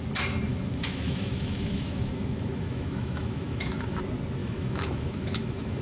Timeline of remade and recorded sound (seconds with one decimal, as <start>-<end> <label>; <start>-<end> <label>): 0.0-0.5 recorded; 0.5-4.0 remade; 4.0-4.4 recorded; 4.4-5.8 remade